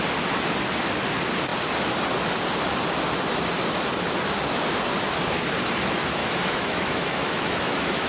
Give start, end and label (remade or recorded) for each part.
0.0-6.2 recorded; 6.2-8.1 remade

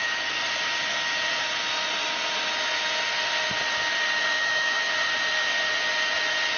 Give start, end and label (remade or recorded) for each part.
0.0-4.4 recorded; 4.4-4.9 remade; 4.9-6.6 recorded